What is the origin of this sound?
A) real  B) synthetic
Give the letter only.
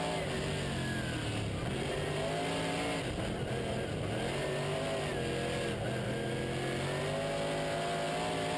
A